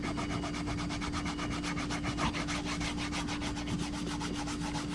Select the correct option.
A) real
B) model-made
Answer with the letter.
A